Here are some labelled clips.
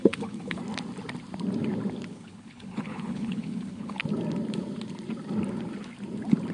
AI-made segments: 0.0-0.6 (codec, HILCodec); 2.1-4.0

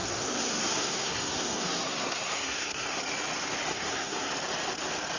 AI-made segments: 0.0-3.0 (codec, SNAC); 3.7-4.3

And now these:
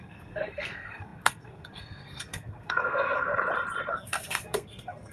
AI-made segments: 0.0-3.3 (codec, SNAC); 3.9-5.1

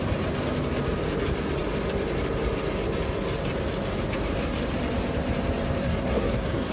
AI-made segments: 5.8-6.7 (codec, SNAC)